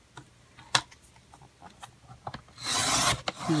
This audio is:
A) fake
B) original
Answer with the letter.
B